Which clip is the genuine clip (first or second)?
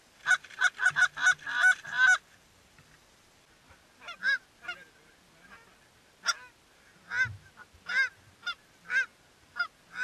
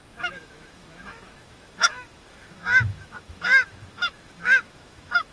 first